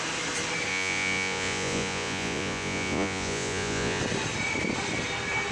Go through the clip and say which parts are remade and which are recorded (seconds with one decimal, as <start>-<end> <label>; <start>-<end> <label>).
0.0-0.7 recorded; 0.7-4.0 remade; 4.0-5.5 recorded